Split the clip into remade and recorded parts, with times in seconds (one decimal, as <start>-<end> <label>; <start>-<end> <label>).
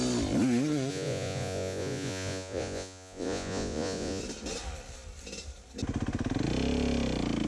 0.0-0.9 recorded; 0.9-4.2 remade; 4.2-7.5 recorded